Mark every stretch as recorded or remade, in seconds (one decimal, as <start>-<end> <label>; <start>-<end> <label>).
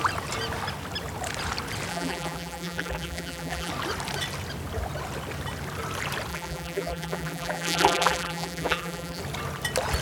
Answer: 0.0-1.9 recorded; 1.9-3.7 remade; 3.7-6.3 recorded; 6.3-9.2 remade; 9.2-10.0 recorded